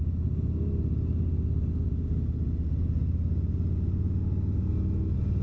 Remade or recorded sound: recorded